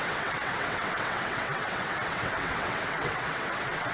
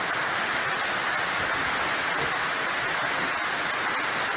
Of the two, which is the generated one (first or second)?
first